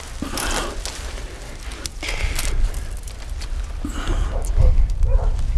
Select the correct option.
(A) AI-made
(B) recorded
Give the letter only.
B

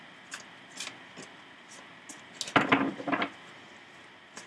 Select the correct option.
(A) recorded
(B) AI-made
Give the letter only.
A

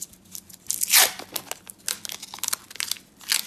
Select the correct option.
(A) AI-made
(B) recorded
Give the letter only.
B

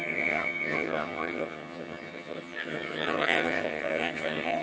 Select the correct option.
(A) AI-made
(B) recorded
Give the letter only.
A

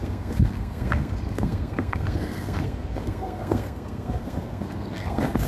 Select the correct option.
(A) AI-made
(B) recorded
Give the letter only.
A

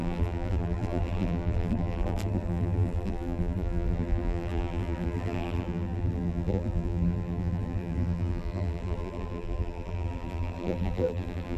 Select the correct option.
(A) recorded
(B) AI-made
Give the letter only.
B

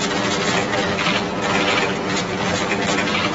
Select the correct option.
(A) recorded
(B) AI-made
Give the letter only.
A